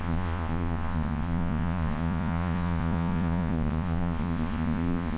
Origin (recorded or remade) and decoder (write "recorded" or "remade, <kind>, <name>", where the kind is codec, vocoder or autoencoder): remade, vocoder, Vocos